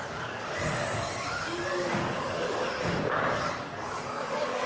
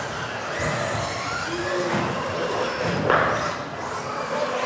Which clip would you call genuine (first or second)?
second